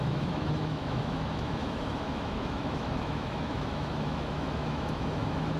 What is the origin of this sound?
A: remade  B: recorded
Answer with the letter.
A